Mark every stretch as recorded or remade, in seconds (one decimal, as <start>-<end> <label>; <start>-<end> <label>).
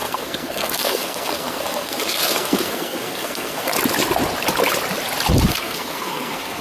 0.0-3.7 remade; 3.7-5.5 recorded; 5.5-6.6 remade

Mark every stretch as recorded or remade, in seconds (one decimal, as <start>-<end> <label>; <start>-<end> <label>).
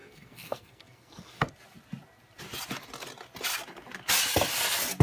0.0-1.5 remade; 1.5-5.0 recorded